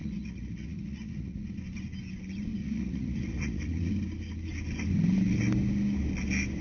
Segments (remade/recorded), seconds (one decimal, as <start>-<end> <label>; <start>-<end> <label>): 0.0-1.4 remade; 1.4-2.6 recorded; 2.6-3.9 remade; 3.9-6.6 recorded